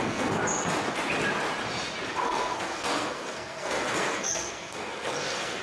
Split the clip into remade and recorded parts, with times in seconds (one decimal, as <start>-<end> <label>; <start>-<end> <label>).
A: 0.0-0.4 remade; 0.4-2.1 recorded; 2.1-5.6 remade